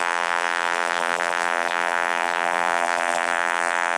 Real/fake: fake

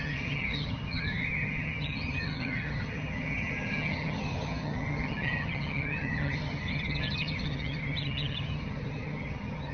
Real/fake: fake